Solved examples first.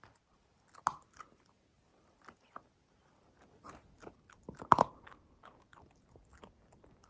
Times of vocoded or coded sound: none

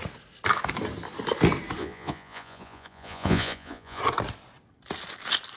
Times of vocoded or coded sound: 1.8-4.0 (vocoder, Vocos)

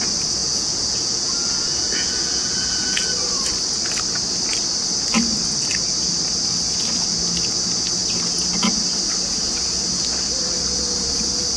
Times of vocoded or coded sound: 0.4-3.1 (vocoder, Vocos)

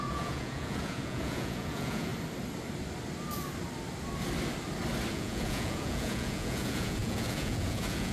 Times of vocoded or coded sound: 0.0-2.1 (vocoder, Vocos); 5.1-8.1

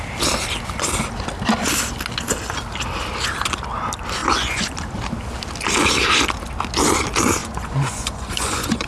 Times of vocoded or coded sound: 4.2-4.7 (vocoder, Vocos); 7.4-8.9

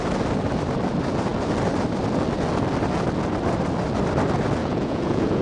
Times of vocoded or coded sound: 4.6-5.4 (vocoder, Vocos)

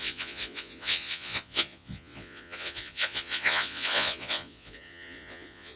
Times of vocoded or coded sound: 0.0-5.8 (vocoder, Vocos)